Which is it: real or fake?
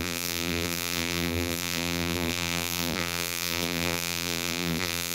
fake